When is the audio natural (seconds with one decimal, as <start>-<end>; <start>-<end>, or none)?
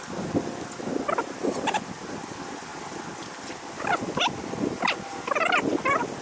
0.0-6.2